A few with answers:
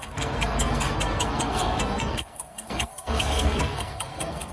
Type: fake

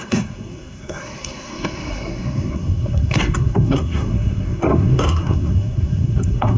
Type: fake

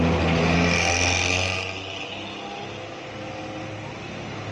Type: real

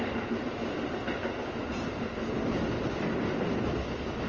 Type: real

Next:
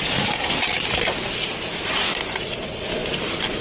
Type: real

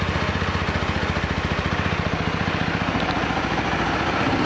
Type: real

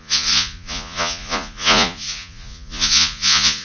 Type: fake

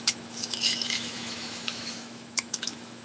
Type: fake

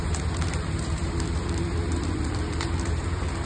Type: fake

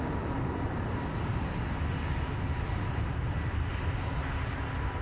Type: real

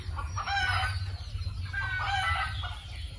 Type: real